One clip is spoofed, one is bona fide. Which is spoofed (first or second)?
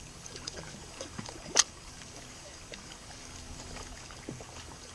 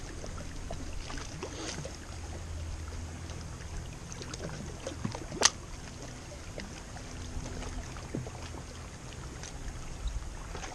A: first